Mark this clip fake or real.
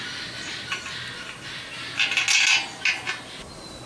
real